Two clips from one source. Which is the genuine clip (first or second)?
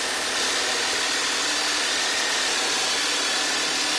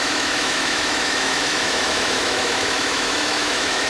first